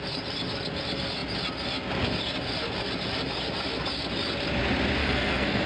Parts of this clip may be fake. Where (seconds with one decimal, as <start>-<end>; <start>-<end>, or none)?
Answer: 5.0-5.7